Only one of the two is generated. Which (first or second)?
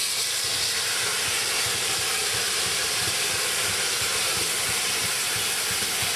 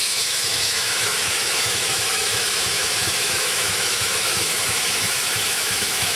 second